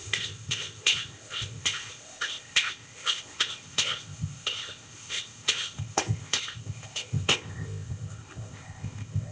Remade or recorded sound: remade